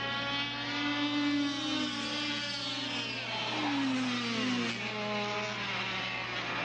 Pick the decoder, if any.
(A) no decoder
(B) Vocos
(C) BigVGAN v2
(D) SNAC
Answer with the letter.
A